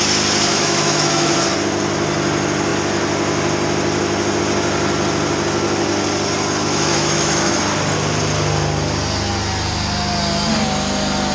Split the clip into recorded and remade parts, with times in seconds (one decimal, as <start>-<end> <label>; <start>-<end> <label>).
0.0-0.5 recorded; 0.5-1.3 remade; 1.3-6.6 recorded; 6.6-7.6 remade; 7.6-11.3 recorded